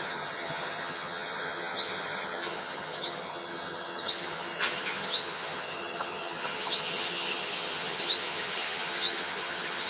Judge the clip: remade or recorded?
remade